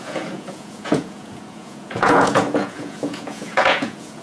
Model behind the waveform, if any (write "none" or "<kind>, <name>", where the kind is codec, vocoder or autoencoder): vocoder, Vocos